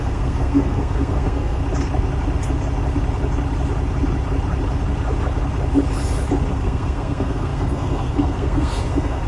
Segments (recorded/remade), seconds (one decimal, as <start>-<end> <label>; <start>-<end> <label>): 0.0-1.6 remade; 1.6-6.5 recorded; 6.5-9.3 remade